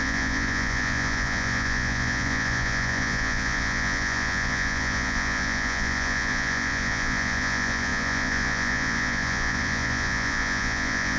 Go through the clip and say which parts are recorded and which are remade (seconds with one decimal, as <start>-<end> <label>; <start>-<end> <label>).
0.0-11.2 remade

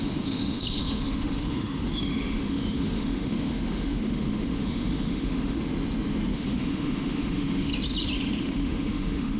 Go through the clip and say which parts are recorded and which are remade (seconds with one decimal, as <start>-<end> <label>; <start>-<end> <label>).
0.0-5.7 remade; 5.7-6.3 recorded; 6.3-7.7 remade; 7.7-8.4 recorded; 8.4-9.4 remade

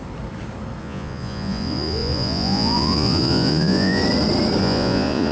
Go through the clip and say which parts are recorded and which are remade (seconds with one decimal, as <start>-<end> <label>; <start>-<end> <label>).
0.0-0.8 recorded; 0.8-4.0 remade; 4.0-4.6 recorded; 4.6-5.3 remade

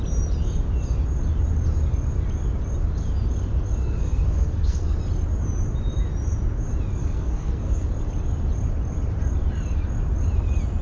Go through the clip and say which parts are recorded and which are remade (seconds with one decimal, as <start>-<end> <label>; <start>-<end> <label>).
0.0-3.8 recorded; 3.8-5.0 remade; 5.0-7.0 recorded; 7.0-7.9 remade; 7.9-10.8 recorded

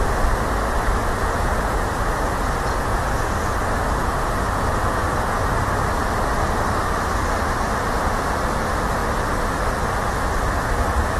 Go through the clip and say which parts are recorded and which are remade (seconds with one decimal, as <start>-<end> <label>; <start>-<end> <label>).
0.0-1.0 recorded; 1.0-3.6 remade; 3.6-4.0 recorded; 4.0-5.5 remade; 5.5-11.2 recorded

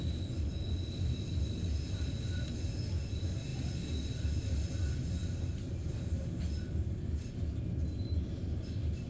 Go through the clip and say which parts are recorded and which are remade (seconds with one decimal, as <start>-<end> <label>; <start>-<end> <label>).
0.0-9.1 recorded

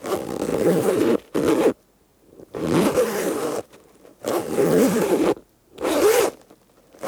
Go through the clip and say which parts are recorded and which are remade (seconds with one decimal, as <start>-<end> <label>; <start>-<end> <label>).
0.0-0.5 recorded; 0.5-1.2 remade; 1.2-2.1 recorded; 2.1-6.3 remade; 6.3-7.1 recorded